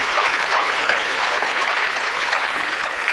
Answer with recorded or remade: remade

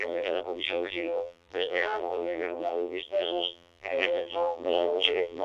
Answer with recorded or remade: remade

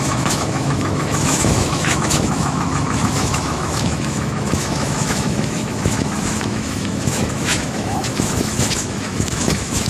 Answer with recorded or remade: remade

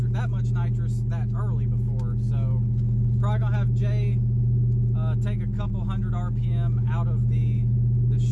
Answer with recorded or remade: recorded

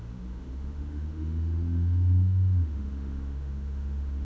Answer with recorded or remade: remade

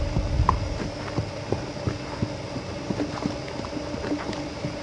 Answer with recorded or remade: recorded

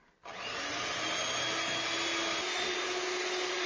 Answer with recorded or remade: recorded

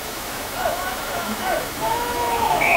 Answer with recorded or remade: remade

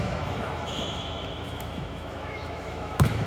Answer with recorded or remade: remade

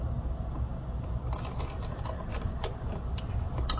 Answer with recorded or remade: recorded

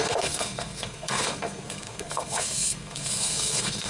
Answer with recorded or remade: remade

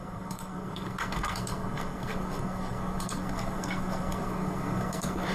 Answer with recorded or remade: remade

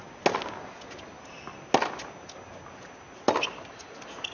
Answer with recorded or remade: recorded